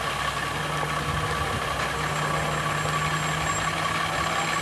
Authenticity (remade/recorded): recorded